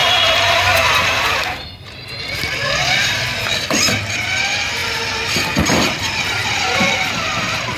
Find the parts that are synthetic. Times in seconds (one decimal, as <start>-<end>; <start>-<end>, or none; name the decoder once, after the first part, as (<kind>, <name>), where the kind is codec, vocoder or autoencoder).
0.0-3.6 (vocoder, BigVGAN v2); 4.8-5.6; 6.4-7.8